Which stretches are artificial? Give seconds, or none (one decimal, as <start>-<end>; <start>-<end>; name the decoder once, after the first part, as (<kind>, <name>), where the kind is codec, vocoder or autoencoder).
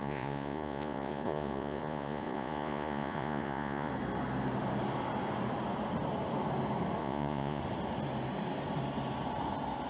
0.0-3.9 (vocoder, Vocos); 7.0-7.6